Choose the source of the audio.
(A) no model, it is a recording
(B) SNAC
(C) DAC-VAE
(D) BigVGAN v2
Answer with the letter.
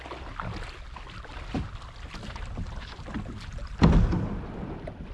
A